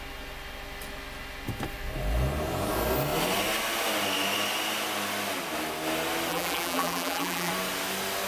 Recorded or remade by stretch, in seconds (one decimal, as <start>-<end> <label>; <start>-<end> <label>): 0.0-6.3 recorded; 6.3-7.5 remade; 7.5-8.3 recorded